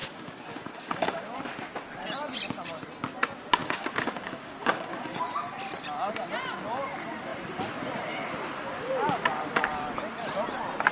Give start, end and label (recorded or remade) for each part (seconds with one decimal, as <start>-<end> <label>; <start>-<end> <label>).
0.0-1.5 remade; 1.5-3.6 recorded; 3.6-5.2 remade; 5.2-10.9 recorded